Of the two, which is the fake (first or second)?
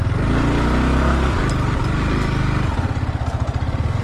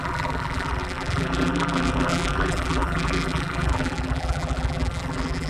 second